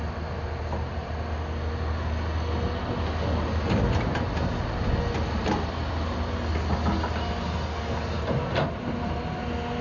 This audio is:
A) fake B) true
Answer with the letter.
B